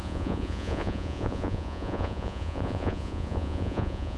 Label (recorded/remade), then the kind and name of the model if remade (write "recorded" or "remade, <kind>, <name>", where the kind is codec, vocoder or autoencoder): remade, vocoder, Vocos